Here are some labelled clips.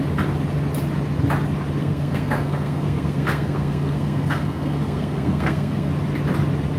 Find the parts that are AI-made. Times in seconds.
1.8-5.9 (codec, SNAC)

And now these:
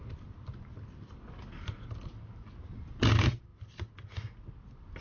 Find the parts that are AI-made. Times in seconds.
none

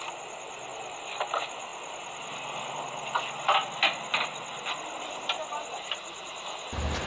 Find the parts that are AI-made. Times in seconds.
none

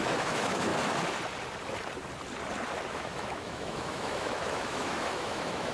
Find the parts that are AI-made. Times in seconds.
0.0-0.7 (autoencoder, DAC-VAE); 2.9-5.7

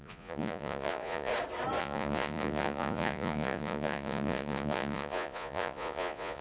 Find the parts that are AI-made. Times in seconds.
0.0-1.3 (vocoder, Vocos); 1.8-6.4

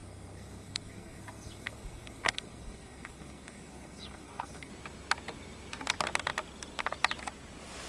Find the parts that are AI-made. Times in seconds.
0.0-4.7 (codec, SNAC)